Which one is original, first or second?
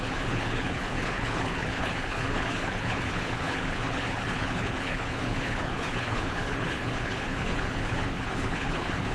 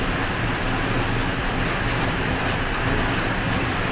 second